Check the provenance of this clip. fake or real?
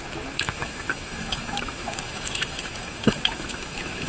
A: fake